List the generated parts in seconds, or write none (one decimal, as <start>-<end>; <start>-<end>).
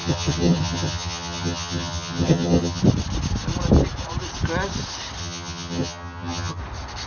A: 0.0-2.8; 5.2-6.6